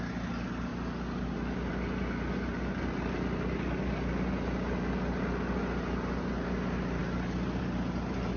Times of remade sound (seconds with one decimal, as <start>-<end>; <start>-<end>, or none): none